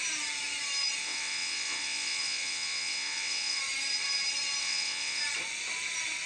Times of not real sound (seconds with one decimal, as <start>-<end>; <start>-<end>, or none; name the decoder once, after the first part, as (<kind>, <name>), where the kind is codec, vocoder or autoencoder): 1.0-3.6 (vocoder, WaveNeXt); 4.6-5.2